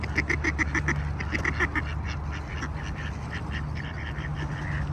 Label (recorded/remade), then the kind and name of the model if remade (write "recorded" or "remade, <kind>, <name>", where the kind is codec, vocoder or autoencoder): recorded